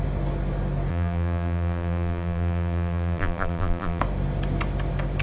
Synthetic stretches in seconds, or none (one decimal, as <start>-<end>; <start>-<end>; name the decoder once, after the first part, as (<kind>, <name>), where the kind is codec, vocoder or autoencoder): 0.9-4.0 (vocoder, BigVGAN v2)